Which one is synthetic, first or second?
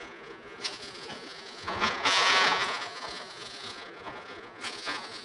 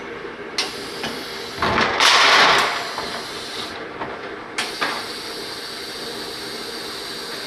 first